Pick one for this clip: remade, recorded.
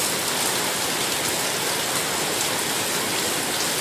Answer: recorded